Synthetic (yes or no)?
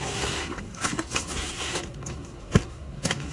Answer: yes